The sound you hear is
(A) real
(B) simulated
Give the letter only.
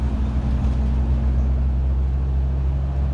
A